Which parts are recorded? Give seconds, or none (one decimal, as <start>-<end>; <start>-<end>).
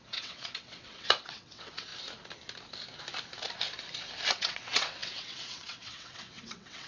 1.9-4.3